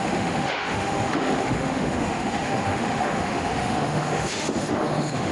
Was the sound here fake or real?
fake